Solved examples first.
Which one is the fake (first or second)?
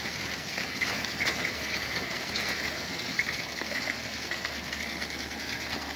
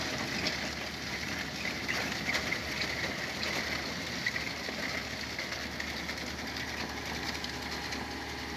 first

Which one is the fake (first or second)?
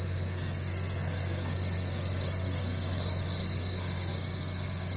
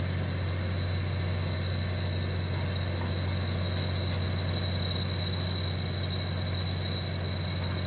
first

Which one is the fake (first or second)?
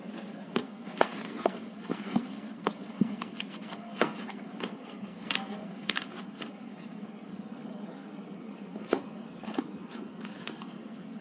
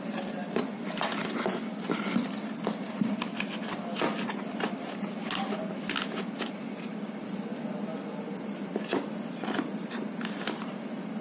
first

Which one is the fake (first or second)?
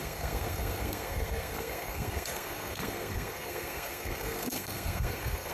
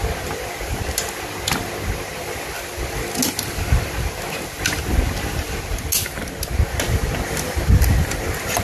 first